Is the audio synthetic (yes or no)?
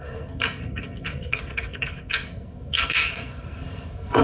yes